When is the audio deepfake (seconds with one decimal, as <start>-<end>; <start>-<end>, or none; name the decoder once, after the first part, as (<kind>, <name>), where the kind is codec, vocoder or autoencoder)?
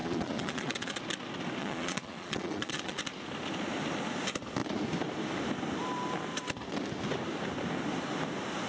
0.0-1.0 (vocoder, Vocos); 1.6-3.0